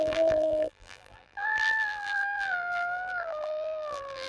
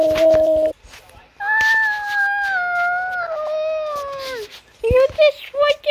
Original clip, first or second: second